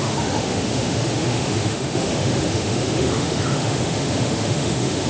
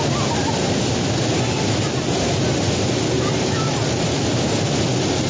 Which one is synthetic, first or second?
first